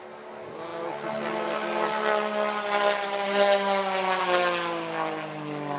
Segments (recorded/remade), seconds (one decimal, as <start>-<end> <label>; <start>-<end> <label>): 0.0-5.8 recorded